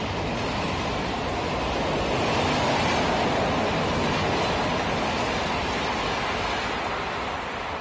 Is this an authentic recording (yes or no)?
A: yes